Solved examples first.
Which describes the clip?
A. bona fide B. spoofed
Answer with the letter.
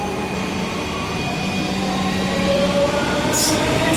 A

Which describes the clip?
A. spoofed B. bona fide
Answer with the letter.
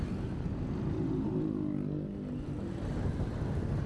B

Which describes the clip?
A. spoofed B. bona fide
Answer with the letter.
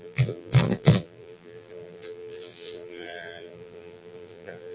A